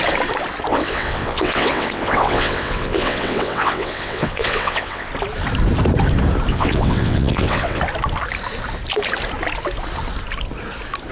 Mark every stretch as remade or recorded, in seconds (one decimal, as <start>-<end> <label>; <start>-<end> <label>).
0.0-0.7 recorded; 0.7-5.1 remade; 5.1-6.5 recorded; 6.5-7.8 remade; 7.8-11.1 recorded